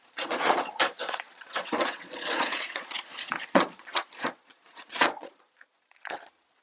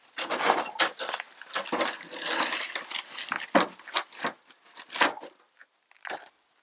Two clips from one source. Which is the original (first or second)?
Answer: second